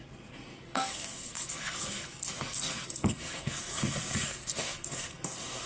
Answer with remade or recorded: remade